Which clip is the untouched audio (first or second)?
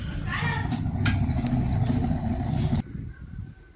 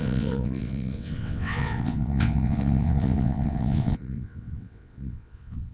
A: first